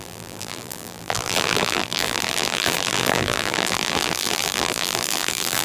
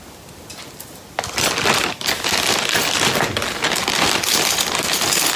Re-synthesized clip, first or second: first